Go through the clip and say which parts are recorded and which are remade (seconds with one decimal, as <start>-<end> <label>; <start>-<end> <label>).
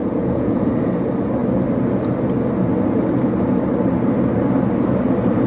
0.0-0.7 remade; 0.7-5.5 recorded